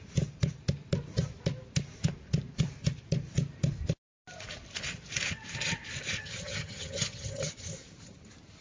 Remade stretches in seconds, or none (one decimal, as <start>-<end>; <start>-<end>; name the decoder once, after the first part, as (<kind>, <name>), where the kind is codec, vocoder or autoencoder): 6.2-7.5 (vocoder, HiFi-GAN)